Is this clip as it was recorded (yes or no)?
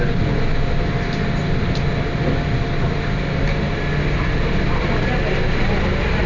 yes